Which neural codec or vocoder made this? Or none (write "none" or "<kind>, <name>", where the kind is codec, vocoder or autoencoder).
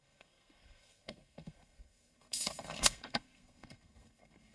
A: codec, SNAC